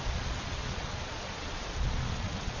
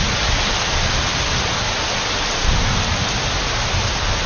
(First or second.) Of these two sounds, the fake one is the first